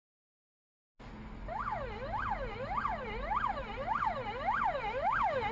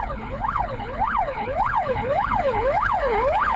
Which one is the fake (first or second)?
second